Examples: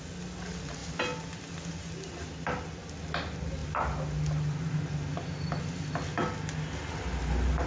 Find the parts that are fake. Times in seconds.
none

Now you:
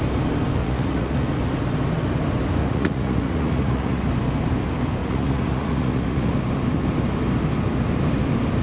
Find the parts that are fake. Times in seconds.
0.6-1.3 (vocoder, Vocos); 2.6-4.0; 5.0-6.3

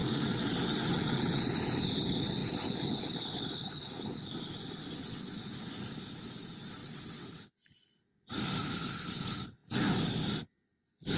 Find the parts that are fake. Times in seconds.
0.0-1.5 (vocoder, WaveNeXt); 6.8-7.5

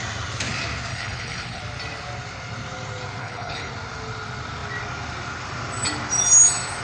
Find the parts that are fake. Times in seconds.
0.9-1.6 (codec, HILCodec); 3.2-3.7

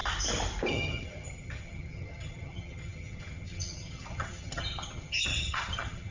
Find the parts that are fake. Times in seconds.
0.7-6.1 (vocoder, HiFi-GAN)